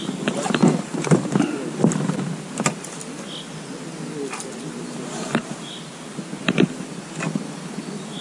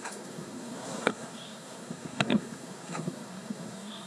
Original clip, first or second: first